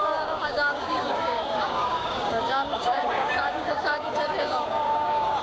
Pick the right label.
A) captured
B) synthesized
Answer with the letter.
B